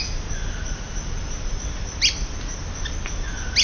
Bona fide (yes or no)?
yes